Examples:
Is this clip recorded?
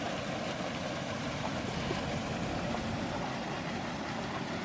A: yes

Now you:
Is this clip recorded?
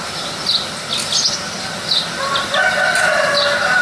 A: yes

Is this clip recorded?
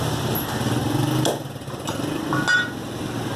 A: yes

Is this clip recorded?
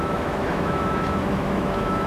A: no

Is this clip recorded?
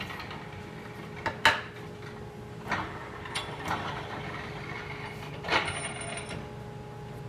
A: yes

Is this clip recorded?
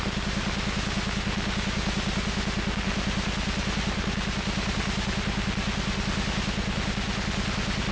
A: yes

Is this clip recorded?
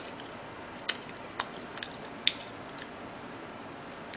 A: yes